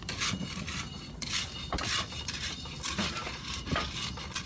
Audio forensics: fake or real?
real